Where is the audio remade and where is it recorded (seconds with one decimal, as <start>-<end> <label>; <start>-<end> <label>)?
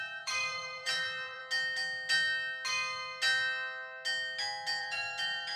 0.0-1.4 remade; 1.4-4.8 recorded; 4.8-5.6 remade